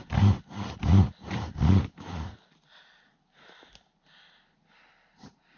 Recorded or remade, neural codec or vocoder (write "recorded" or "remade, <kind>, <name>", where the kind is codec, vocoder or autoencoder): recorded